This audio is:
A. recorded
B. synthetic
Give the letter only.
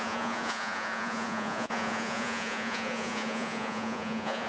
B